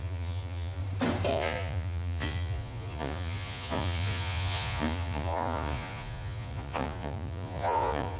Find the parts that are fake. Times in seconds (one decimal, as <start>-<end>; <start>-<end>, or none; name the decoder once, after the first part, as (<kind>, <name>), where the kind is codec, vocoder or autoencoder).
0.0-0.8 (vocoder, Vocos); 1.3-8.2